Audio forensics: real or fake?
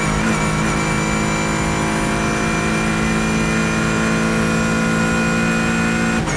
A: real